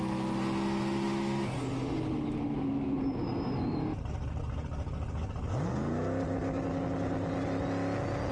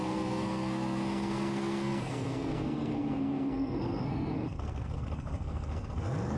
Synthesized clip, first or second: second